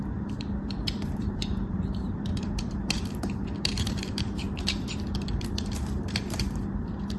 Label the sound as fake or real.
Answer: fake